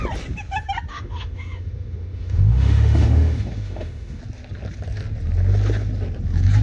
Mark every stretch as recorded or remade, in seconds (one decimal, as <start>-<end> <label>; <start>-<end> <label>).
0.0-0.9 recorded; 0.9-4.2 remade; 4.2-6.6 recorded